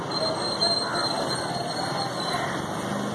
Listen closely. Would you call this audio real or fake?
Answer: real